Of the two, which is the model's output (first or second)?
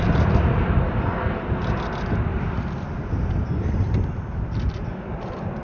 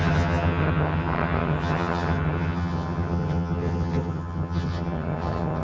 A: second